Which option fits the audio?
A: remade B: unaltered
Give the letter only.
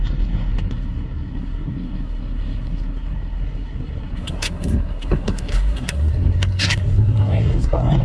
A